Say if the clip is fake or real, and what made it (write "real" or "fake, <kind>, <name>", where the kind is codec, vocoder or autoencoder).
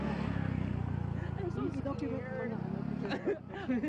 real